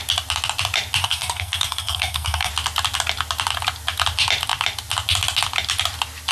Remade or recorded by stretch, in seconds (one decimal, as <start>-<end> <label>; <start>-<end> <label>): 0.0-1.0 recorded; 1.0-2.5 remade; 2.5-6.3 recorded